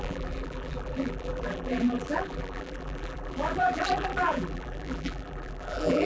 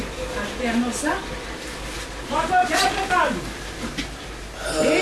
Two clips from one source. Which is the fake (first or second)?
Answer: first